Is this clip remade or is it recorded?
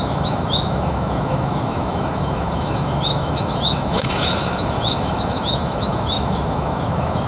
remade